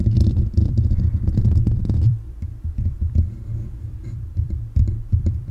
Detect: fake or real fake